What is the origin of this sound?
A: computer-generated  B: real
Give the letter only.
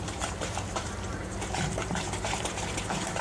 A